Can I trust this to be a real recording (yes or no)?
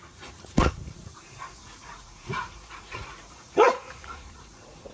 no